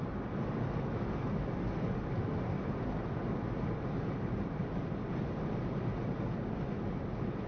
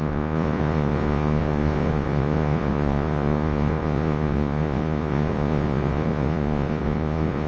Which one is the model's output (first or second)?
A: second